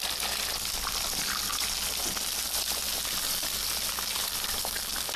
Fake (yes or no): no